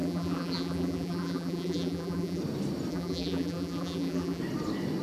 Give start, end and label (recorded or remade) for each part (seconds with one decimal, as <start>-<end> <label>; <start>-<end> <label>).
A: 0.0-2.4 remade; 2.4-2.9 recorded; 2.9-4.4 remade; 4.4-5.0 recorded